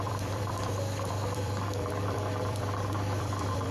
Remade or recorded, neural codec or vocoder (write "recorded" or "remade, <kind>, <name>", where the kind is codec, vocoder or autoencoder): remade, vocoder, BigVGAN v2